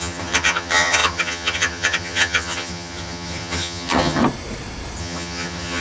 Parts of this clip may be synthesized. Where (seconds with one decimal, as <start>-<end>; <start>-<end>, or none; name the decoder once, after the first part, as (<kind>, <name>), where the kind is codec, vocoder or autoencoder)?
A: 0.0-4.2 (vocoder, HiFi-GAN); 5.0-5.8